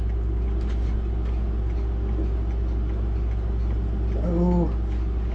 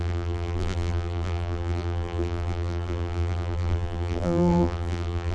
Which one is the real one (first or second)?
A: first